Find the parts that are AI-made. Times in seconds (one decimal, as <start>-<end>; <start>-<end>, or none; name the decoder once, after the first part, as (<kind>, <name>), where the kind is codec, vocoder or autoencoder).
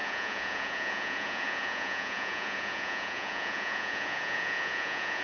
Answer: 0.0-5.2 (vocoder, Vocos)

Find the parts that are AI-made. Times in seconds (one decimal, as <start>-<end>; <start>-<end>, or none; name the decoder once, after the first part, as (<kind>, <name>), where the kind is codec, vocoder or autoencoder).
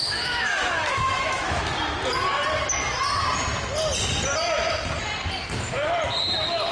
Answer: 0.0-1.6 (autoencoder, DAC-VAE)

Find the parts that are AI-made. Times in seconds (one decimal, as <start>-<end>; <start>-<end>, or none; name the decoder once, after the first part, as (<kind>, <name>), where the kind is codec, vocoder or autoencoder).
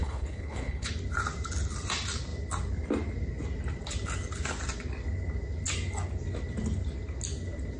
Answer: 0.0-0.9 (codec, HILCodec)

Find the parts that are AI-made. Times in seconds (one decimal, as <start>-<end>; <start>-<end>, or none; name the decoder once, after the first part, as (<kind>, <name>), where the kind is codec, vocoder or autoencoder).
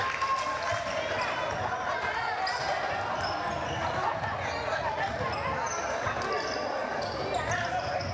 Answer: none